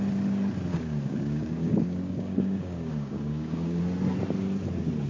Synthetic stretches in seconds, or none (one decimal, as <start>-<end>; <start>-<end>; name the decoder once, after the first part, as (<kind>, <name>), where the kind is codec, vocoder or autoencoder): 0.7-3.8 (codec, DAC)